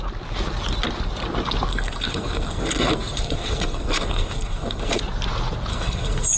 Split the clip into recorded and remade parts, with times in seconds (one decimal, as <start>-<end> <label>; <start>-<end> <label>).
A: 0.0-1.7 recorded; 1.7-5.0 remade; 5.0-5.7 recorded; 5.7-6.4 remade